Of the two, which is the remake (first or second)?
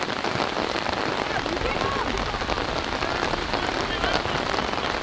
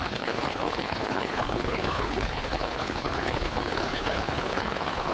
second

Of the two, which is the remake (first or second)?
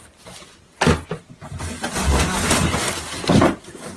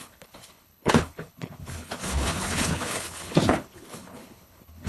second